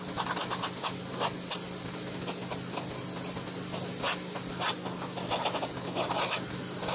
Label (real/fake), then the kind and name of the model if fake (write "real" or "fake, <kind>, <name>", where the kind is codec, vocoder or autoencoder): real